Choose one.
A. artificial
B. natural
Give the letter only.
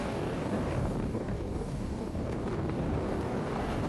A